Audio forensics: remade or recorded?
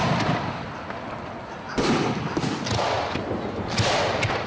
recorded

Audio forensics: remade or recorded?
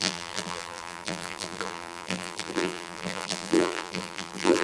remade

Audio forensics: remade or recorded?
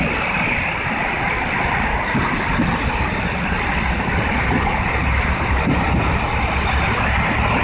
remade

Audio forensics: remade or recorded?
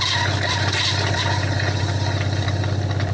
recorded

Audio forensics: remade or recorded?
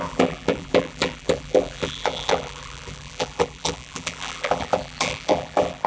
remade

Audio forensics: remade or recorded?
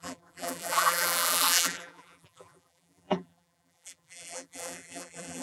remade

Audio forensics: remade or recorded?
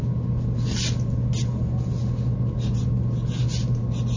recorded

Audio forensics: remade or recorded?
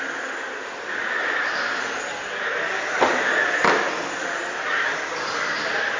recorded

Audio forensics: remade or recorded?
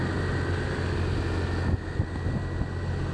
recorded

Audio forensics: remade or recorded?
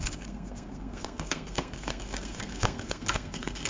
remade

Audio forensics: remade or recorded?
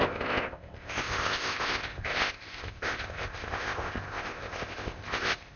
remade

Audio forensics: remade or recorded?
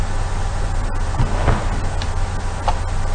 recorded